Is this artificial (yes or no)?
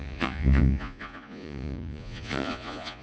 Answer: yes